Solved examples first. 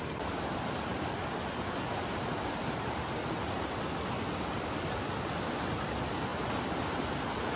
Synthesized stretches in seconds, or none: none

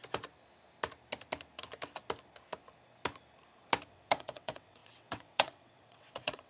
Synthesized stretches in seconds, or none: 3.9-6.5 (vocoder, WaveNeXt)

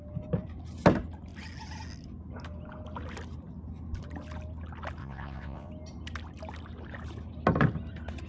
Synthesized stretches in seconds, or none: 5.0-5.7 (vocoder, WaveNeXt)

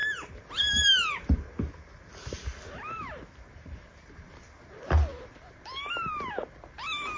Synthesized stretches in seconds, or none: none

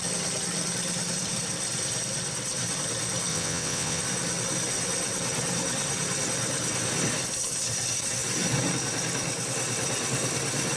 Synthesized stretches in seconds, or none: 3.3-4.0 (vocoder, WaveNeXt)

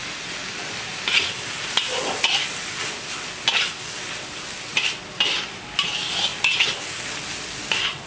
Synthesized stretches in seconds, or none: none

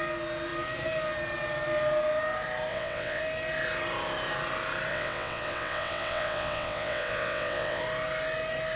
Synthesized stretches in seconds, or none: 2.7-3.2 (vocoder, WaveNeXt); 4.9-7.8